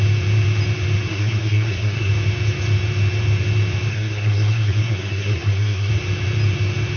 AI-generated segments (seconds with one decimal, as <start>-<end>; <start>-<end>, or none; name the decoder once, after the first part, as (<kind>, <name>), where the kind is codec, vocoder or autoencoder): 1.1-2.1 (codec, SNAC); 3.9-5.9